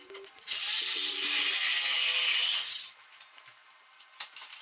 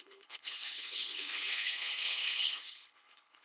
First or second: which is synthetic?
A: second